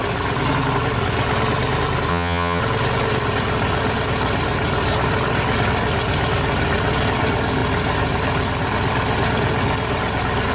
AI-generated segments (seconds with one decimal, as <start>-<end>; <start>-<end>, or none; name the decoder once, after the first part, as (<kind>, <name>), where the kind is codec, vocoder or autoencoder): 2.1-2.6 (vocoder, HiFi-GAN)